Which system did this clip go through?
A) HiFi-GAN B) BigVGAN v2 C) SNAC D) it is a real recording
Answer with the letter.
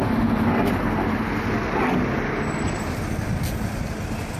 D